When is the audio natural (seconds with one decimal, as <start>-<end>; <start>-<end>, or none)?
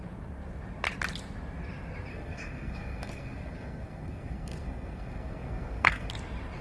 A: 0.0-2.1; 6.1-6.6